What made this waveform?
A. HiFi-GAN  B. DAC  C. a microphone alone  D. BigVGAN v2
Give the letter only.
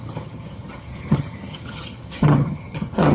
A